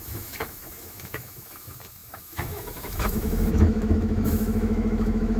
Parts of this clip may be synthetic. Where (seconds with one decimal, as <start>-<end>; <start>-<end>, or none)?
0.0-5.4